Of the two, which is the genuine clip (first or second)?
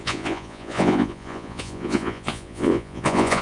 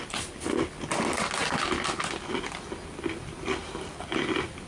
second